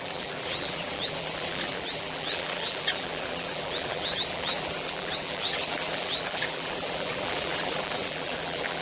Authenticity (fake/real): fake